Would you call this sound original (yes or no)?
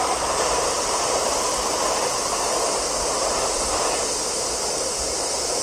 yes